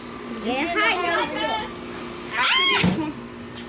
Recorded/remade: recorded